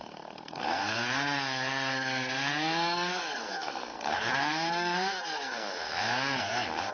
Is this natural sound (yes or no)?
no